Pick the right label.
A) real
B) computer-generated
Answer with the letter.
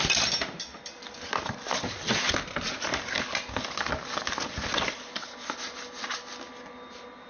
A